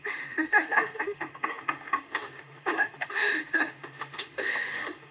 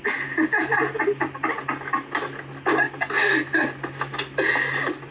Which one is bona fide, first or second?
second